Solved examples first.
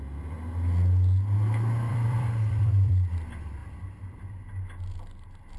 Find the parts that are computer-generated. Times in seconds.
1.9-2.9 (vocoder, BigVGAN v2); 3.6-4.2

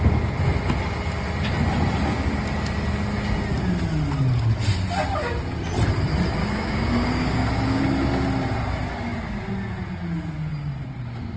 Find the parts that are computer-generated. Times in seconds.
6.4-7.8 (codec, DAC)